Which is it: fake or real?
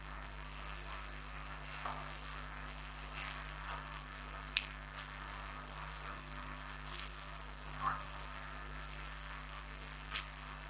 fake